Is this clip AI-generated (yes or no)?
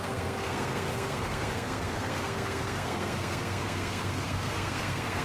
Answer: yes